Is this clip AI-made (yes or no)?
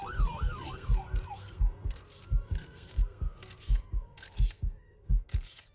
yes